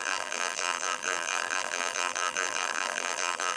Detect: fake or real fake